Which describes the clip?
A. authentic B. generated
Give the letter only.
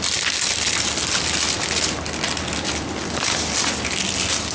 A